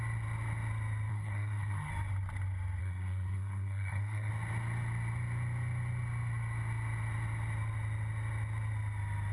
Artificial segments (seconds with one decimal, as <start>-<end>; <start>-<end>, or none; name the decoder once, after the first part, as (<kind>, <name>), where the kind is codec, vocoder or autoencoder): 1.1-1.9 (codec, SNAC); 2.8-4.3